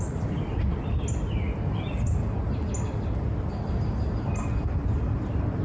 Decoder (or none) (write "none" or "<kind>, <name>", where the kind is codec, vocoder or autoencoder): none